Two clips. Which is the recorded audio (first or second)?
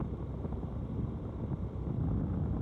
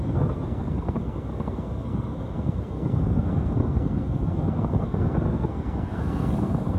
first